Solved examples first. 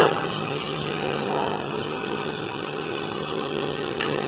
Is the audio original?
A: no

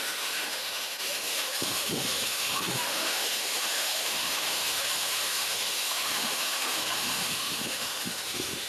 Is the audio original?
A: no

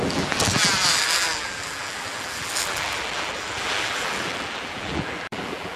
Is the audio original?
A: no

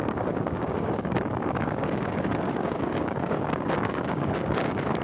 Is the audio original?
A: no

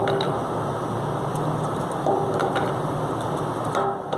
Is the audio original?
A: yes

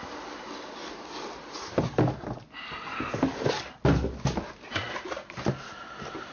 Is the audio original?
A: yes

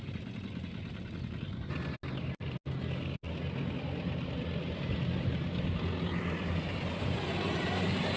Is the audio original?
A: yes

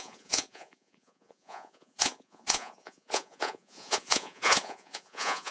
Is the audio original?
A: no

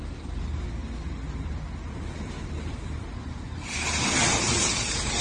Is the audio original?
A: yes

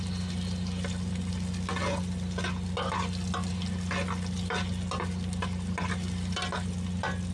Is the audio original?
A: yes